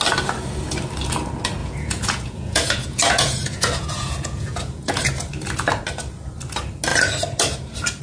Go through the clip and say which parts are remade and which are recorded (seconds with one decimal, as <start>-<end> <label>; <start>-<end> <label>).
0.0-1.6 recorded; 1.6-5.0 remade; 5.0-8.0 recorded

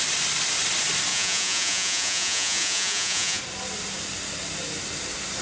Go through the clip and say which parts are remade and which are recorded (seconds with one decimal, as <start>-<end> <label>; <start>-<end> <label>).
0.0-1.1 recorded; 1.1-3.4 remade; 3.4-5.4 recorded

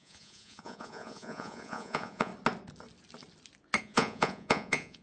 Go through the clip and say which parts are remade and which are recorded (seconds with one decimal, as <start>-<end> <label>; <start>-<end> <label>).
0.0-2.3 remade; 2.3-3.8 recorded; 3.8-5.0 remade

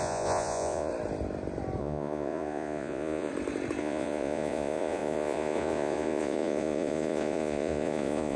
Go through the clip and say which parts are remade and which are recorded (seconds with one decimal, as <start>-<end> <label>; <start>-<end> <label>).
0.0-0.9 remade; 0.9-1.8 recorded; 1.8-3.3 remade; 3.3-3.8 recorded; 3.8-8.4 remade

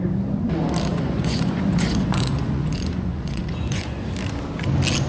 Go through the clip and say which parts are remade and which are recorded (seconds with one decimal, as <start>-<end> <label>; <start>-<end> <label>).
0.0-0.9 recorded; 0.9-4.0 remade; 4.0-5.1 recorded

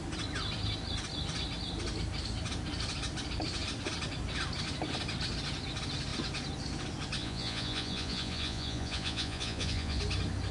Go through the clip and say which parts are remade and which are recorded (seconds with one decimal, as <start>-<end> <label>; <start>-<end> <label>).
0.0-7.2 recorded; 7.2-10.0 remade; 10.0-10.5 recorded

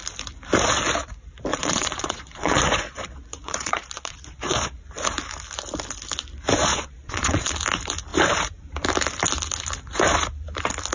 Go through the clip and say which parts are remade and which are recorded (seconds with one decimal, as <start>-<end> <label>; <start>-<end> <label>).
0.0-1.5 recorded; 1.5-4.8 remade; 4.8-6.7 recorded; 6.7-7.5 remade; 7.5-10.9 recorded